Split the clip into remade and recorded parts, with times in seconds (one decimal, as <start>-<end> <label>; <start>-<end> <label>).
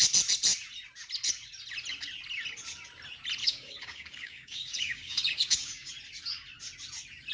0.0-3.4 recorded; 3.4-5.9 remade; 5.9-7.3 recorded